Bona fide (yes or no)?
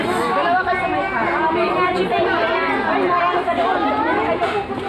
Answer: yes